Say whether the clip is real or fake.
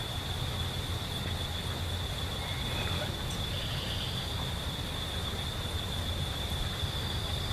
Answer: real